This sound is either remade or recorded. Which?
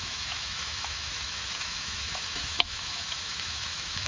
remade